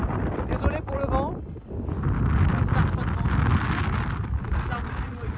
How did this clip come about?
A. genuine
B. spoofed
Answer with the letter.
A